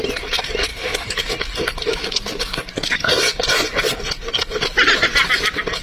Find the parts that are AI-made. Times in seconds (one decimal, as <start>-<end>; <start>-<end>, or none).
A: 0.7-1.2; 1.9-3.1

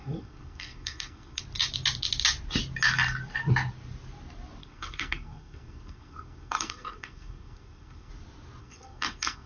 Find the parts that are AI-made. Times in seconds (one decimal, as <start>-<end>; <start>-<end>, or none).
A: 0.0-1.4; 4.6-8.1; 8.6-9.5

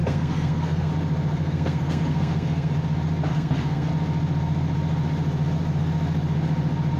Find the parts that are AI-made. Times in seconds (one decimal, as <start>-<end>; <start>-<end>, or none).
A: 0.0-0.9; 1.3-2.7; 3.3-3.9

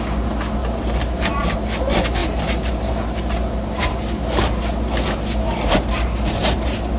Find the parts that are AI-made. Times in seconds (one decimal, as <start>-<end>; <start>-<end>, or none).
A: 0.6-1.4